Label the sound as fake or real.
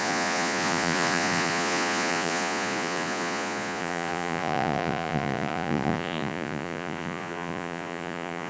fake